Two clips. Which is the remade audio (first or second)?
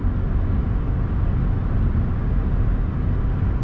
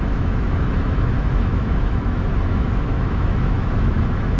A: second